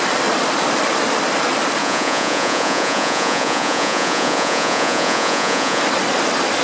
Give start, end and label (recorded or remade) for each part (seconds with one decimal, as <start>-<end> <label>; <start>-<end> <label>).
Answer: 0.0-1.8 recorded; 1.8-5.8 remade; 5.8-6.6 recorded